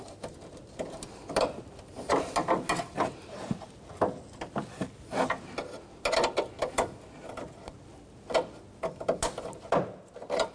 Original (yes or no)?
yes